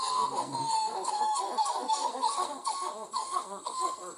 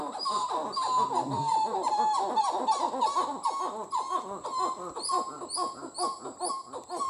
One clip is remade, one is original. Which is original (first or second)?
second